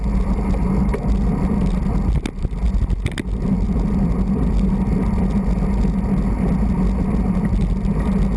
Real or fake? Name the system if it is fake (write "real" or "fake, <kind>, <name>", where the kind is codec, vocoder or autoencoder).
real